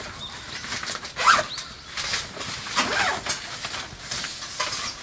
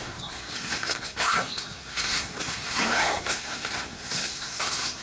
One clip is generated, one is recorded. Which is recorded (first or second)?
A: first